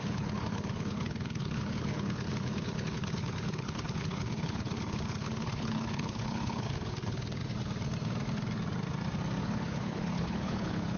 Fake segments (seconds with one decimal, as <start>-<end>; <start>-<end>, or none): 0.0-7.4; 9.4-11.0